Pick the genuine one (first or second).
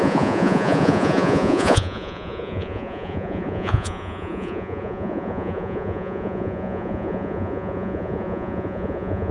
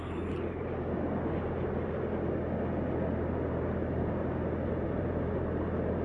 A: second